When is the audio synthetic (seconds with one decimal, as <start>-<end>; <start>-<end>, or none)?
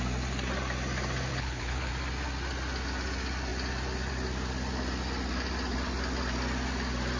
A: 1.3-1.9